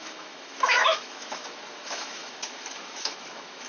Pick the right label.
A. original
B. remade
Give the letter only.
B